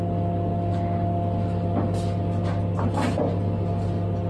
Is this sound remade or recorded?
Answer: recorded